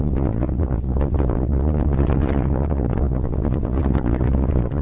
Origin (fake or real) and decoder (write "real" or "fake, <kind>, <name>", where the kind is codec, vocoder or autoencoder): fake, vocoder, Vocos